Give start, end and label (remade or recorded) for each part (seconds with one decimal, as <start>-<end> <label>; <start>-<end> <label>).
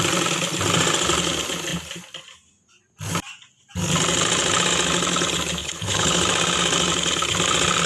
0.0-5.6 recorded; 5.6-6.2 remade; 6.2-7.9 recorded